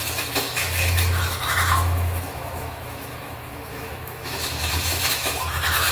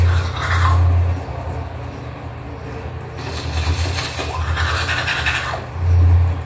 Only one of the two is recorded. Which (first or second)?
second